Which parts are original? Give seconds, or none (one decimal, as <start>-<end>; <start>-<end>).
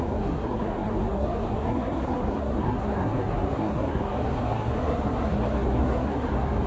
none